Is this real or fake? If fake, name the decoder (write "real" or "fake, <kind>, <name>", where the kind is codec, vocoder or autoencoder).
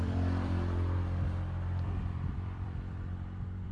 fake, vocoder, BigVGAN v2